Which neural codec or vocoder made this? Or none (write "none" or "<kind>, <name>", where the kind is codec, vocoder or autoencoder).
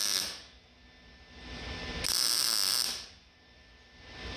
none